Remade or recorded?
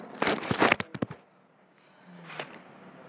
recorded